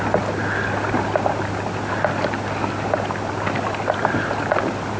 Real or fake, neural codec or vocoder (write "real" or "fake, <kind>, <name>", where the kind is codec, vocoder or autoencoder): real